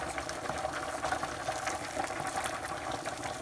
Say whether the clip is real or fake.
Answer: real